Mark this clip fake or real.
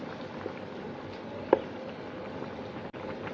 real